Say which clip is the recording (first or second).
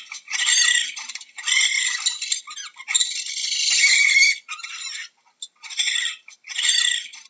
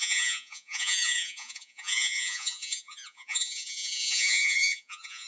first